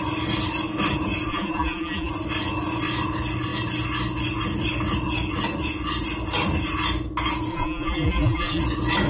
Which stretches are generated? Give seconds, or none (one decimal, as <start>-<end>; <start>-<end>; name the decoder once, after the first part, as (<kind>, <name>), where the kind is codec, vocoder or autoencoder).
1.3-2.1 (vocoder, BigVGAN v2); 7.5-8.6